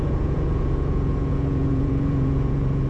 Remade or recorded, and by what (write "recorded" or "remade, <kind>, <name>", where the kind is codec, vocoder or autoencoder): remade, vocoder, Vocos